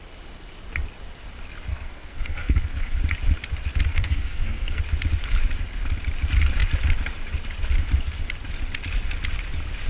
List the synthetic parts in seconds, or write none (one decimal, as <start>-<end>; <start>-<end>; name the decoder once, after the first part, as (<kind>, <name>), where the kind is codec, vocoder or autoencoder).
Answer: 1.7-3.0 (codec, SNAC); 3.9-4.8